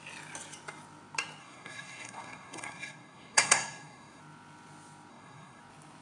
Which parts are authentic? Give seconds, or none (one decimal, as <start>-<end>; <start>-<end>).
0.0-1.4; 4.2-5.1; 5.6-6.0